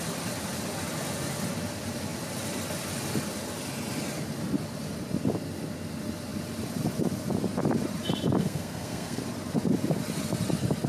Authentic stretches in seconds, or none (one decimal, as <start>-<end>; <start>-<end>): 0.0-8.4; 9.2-10.9